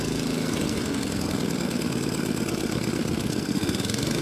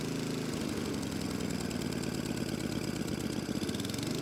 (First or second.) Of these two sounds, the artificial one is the first